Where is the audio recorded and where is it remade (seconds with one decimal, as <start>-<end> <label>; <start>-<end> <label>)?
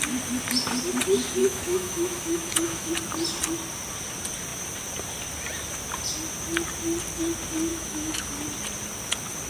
0.0-1.4 recorded; 1.4-2.9 remade; 2.9-7.7 recorded; 7.7-8.3 remade; 8.3-9.5 recorded